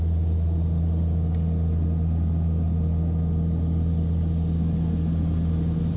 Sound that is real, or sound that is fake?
real